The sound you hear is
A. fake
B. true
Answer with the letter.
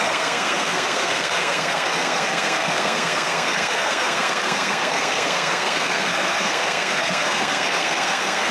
A